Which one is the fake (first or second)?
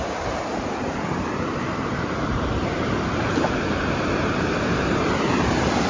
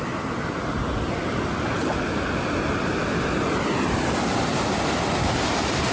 first